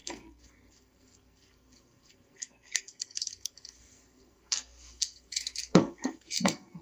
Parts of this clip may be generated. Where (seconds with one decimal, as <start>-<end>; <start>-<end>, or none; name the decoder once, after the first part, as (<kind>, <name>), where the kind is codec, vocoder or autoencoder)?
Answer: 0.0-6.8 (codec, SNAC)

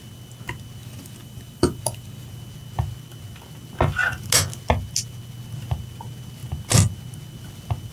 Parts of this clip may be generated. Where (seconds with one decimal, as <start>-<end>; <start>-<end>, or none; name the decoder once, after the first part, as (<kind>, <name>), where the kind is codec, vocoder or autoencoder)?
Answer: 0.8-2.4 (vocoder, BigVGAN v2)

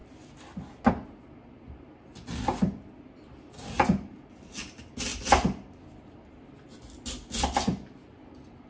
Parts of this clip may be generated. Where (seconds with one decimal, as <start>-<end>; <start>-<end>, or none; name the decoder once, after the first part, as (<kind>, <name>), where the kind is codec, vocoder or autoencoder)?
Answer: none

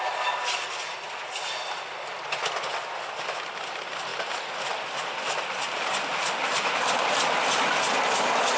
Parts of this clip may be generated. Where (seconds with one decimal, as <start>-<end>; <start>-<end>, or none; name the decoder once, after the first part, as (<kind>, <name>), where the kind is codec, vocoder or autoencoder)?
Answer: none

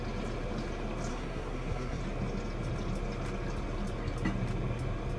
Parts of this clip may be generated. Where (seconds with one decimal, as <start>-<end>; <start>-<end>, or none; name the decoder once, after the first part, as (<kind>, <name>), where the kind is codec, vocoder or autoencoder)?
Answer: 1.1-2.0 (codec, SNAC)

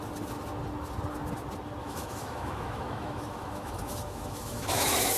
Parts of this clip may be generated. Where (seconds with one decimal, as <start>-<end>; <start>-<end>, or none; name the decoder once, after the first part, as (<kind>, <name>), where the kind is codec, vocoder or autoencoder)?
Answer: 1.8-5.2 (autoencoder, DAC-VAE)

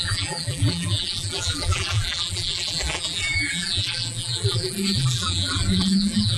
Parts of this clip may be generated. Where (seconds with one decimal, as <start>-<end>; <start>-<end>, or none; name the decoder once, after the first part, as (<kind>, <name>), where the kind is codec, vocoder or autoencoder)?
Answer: 0.0-6.4 (vocoder, BigVGAN v2)